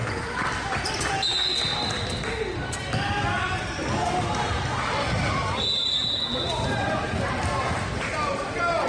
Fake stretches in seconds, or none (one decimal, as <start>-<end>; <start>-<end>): none